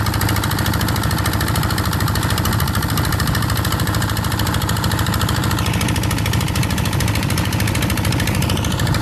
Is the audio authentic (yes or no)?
yes